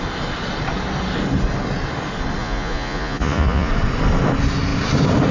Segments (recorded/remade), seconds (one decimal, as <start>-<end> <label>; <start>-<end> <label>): 0.0-2.4 recorded; 2.4-3.7 remade; 3.7-5.3 recorded